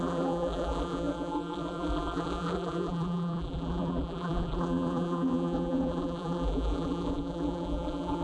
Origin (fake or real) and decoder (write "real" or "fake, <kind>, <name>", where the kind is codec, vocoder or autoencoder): fake, vocoder, BigVGAN v2